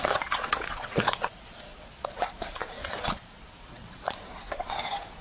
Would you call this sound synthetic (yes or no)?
yes